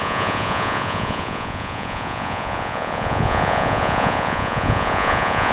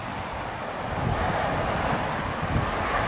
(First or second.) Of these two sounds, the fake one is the first